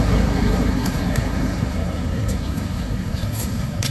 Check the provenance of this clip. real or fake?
fake